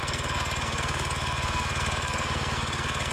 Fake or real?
fake